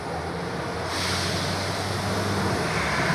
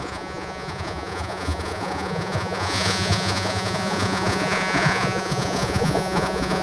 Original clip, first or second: first